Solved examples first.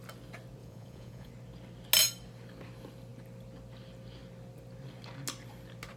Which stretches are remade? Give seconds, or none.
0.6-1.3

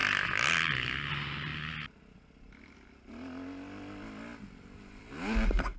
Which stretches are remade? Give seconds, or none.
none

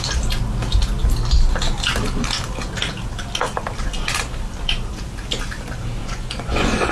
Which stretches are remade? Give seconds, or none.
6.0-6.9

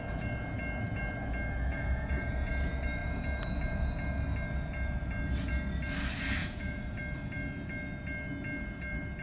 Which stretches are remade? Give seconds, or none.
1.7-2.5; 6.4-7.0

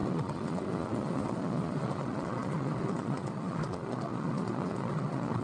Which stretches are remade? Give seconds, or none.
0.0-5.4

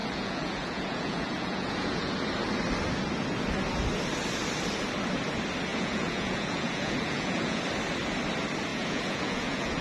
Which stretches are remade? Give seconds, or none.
0.0-2.1; 5.7-7.6; 8.7-9.8

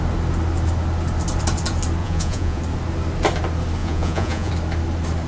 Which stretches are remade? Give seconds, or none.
2.0-2.6; 3.8-4.5

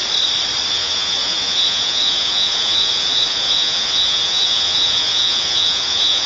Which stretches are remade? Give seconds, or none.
0.7-6.3